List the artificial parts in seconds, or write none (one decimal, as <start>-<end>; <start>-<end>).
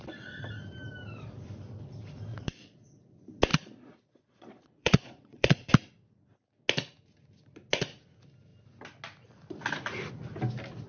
2.3-2.9; 3.5-5.7